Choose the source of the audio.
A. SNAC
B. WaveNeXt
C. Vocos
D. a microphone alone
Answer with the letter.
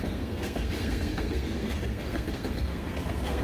A